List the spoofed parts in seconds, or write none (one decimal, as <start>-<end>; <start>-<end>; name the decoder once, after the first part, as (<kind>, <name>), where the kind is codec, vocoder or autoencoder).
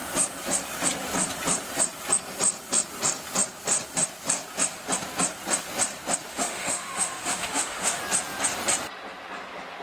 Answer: 6.3-8.0 (autoencoder, DAC-VAE)